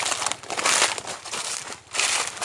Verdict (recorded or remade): recorded